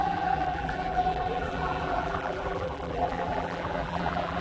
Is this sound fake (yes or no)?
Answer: yes